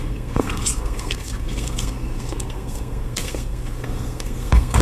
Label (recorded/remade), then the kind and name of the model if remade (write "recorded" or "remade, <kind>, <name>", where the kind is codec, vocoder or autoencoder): remade, codec, SNAC